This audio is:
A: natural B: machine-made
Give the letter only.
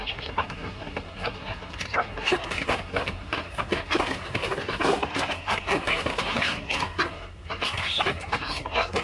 B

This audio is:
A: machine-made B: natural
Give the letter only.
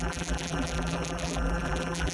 A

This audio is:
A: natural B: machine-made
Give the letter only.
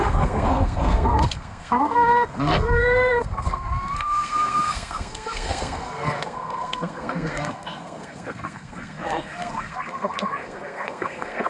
B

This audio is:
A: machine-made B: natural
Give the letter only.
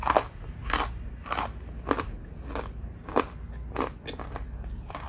B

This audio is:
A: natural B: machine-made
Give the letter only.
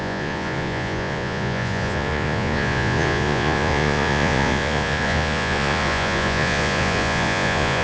B